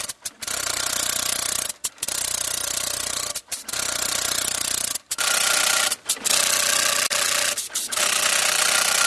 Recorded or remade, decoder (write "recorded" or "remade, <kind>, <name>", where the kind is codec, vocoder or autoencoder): recorded